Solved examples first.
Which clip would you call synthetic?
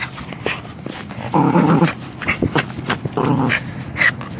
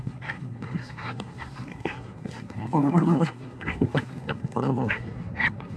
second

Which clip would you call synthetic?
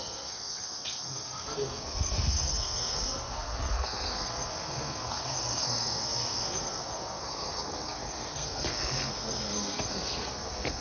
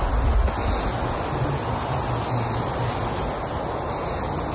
first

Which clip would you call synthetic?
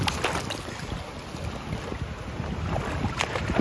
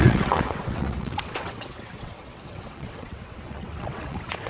second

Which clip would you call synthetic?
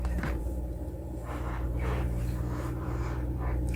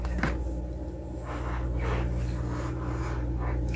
first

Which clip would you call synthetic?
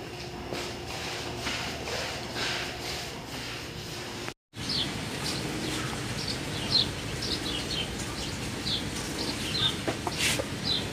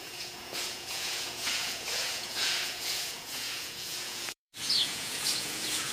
second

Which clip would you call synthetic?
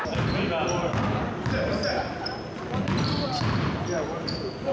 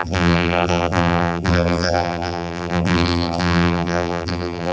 second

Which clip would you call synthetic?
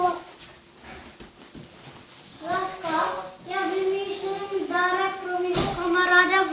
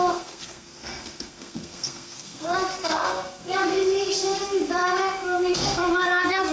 second